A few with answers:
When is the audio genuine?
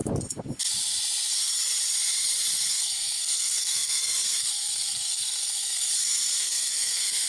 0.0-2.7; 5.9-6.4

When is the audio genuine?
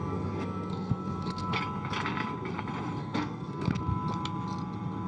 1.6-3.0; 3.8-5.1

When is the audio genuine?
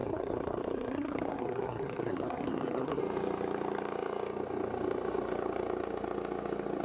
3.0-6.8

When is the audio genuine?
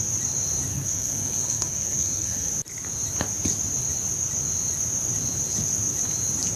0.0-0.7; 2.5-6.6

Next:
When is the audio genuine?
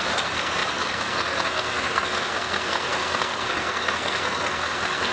none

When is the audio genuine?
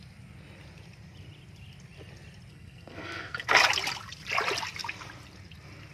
0.0-2.5; 3.6-5.9